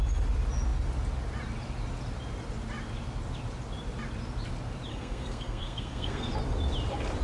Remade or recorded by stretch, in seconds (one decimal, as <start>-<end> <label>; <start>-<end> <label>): 0.0-4.9 recorded; 4.9-6.3 remade; 6.3-7.2 recorded